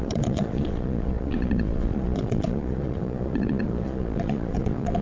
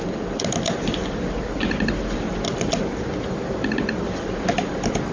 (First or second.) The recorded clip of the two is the second